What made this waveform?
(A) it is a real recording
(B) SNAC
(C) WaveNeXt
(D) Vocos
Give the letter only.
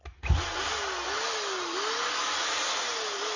A